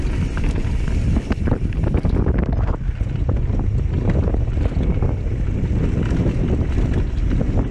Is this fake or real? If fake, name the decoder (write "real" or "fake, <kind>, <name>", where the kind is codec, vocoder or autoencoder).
real